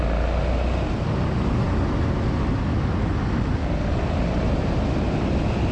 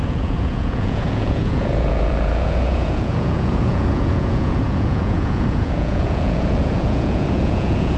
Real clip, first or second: first